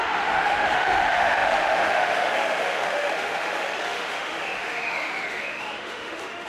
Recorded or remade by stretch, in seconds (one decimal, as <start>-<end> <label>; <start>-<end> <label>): 0.0-6.5 remade